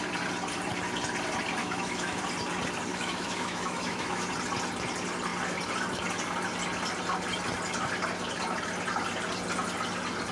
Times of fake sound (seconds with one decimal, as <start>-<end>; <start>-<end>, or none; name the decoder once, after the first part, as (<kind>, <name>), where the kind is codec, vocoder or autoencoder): 1.6-2.2 (autoencoder, DAC-VAE); 2.9-4.3